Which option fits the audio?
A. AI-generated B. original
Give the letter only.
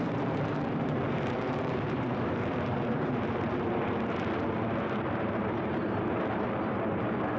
A